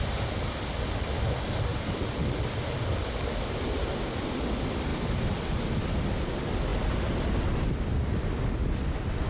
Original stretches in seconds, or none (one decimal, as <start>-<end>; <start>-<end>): 0.0-9.3